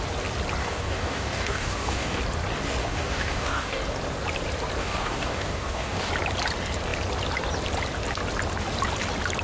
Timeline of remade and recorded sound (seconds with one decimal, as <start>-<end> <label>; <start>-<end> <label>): 0.0-0.6 recorded; 0.6-2.2 remade; 2.2-2.8 recorded; 2.8-3.8 remade; 3.8-4.8 recorded; 4.8-6.1 remade; 6.1-9.4 recorded